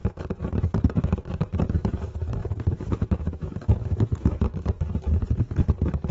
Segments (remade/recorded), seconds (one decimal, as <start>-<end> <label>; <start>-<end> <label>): 0.0-1.9 remade; 1.9-2.4 recorded; 2.4-4.9 remade; 4.9-6.1 recorded